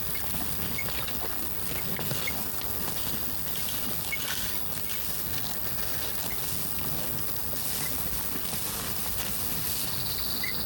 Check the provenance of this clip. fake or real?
real